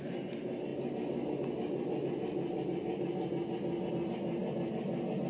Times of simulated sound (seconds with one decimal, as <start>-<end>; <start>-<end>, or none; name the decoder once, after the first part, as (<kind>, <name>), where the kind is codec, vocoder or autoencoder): 0.0-0.7 (vocoder, BigVGAN v2); 3.9-5.3